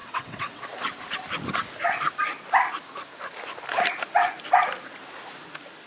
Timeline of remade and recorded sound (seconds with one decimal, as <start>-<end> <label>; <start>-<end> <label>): 0.0-0.6 remade; 0.6-5.9 recorded